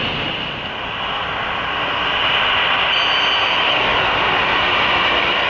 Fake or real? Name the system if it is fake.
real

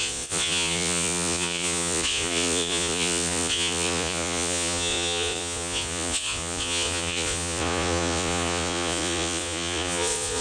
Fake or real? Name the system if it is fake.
fake, vocoder, Vocos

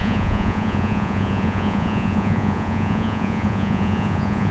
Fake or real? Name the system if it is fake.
fake, vocoder, Vocos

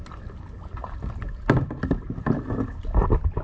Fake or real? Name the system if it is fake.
real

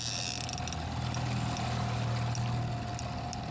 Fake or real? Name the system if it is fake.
real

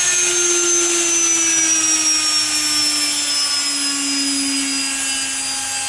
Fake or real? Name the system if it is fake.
real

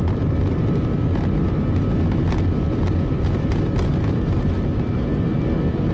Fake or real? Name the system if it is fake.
real